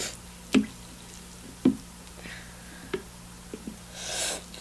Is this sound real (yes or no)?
yes